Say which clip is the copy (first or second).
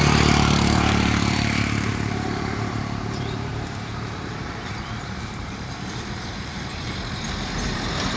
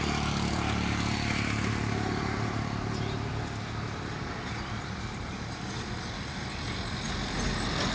first